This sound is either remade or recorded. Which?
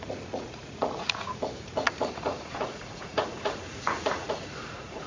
remade